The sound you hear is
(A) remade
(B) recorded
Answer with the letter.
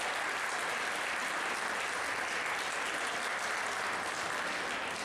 B